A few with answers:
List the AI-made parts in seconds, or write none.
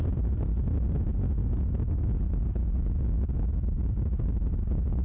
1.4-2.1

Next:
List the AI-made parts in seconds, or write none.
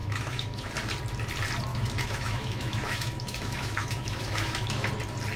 0.0-0.7; 1.7-4.9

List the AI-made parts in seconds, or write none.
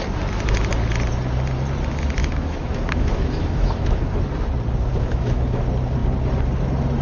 2.2-4.0; 4.9-5.6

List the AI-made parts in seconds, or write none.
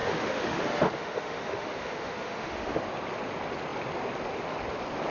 0.0-2.8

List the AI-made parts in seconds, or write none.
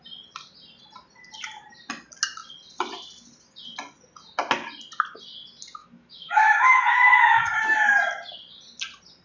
5.8-7.6